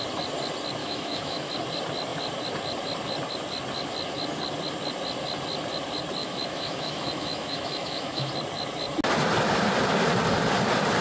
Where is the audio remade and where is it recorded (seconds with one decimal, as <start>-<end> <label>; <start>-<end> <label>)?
0.0-0.8 recorded; 0.8-1.5 remade; 1.5-6.2 recorded; 6.2-8.3 remade; 8.3-11.0 recorded